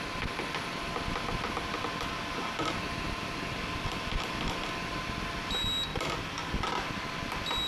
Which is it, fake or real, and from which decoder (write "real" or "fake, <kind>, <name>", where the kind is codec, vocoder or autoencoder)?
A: real